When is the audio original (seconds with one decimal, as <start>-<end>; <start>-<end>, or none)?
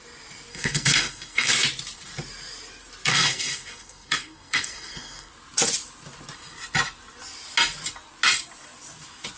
0.0-0.5; 1.5-3.1; 5.3-9.4